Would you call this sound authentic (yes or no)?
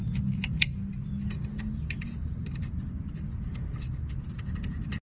yes